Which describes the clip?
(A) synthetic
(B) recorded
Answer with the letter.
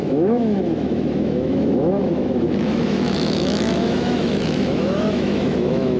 A